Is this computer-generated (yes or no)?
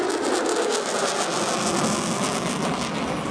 no